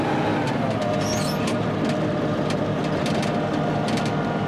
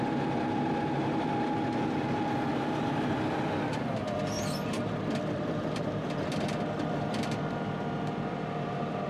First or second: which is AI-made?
second